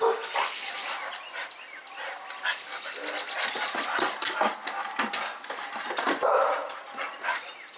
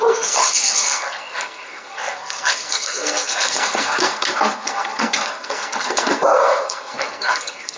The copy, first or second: second